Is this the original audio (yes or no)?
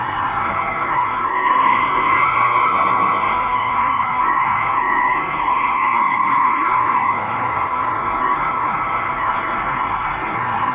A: no